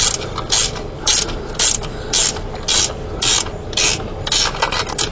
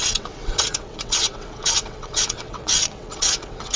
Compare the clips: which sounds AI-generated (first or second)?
second